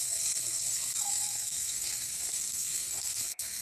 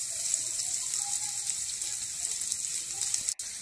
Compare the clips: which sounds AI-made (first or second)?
first